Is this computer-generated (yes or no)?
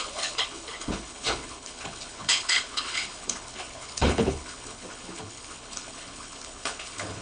yes